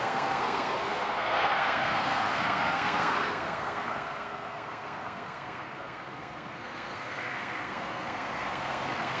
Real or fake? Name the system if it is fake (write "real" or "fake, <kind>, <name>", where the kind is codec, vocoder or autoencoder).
fake, codec, SNAC